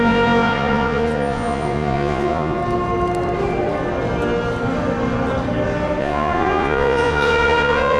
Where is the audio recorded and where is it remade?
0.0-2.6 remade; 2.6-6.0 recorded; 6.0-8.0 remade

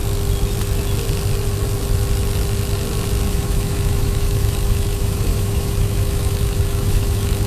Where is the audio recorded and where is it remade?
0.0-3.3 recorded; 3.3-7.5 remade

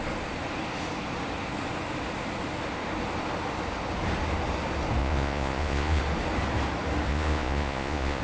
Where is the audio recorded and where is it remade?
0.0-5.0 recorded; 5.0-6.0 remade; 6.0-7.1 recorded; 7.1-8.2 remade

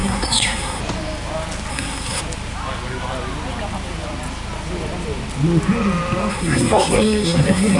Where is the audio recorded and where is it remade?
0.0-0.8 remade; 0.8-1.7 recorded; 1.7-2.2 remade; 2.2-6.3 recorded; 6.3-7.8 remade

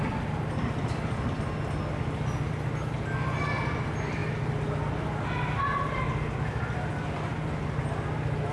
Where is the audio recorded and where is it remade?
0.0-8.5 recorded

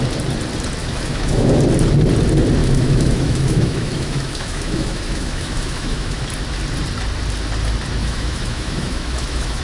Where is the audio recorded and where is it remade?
0.0-0.8 recorded; 0.8-1.6 remade; 1.6-2.6 recorded; 2.6-6.2 remade; 6.2-8.0 recorded; 8.0-9.6 remade

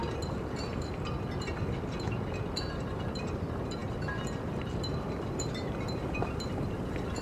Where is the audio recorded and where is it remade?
0.0-7.2 remade

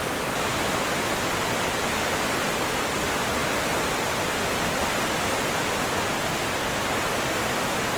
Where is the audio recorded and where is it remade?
0.0-8.0 recorded